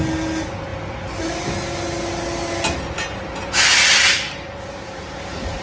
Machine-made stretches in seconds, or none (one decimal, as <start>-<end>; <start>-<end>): none